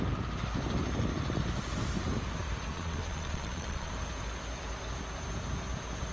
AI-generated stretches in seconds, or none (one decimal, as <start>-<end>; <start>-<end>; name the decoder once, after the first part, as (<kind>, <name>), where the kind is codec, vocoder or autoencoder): 2.7-3.9 (vocoder, Vocos)